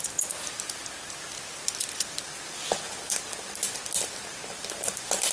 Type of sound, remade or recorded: recorded